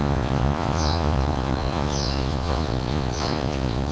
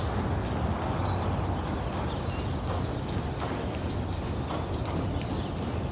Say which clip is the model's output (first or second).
first